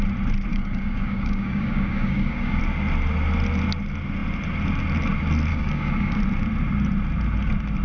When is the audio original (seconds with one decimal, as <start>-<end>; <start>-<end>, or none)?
0.0-0.5; 2.6-5.5; 6.2-7.8